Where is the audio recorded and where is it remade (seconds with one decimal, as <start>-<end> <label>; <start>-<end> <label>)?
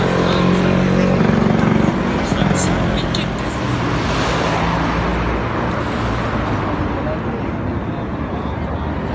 0.0-9.1 recorded